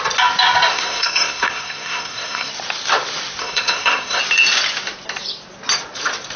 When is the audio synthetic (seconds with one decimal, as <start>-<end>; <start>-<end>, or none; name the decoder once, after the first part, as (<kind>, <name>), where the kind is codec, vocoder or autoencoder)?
0.7-2.5 (codec, SNAC); 3.4-4.2